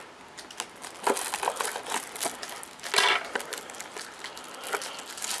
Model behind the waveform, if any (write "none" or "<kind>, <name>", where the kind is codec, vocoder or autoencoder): none